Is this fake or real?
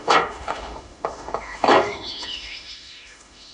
fake